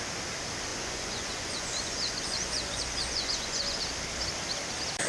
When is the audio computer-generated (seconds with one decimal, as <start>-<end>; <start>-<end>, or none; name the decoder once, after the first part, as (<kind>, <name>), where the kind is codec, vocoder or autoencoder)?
0.7-3.8 (vocoder, Vocos)